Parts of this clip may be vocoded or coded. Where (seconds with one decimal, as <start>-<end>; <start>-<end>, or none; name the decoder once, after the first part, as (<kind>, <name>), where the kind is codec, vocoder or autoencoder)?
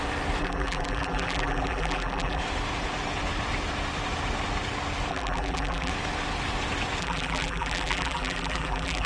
0.4-2.4 (vocoder, BigVGAN v2); 5.1-5.9; 7.0-9.1